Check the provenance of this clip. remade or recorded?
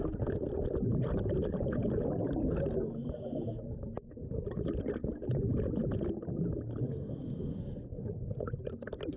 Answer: recorded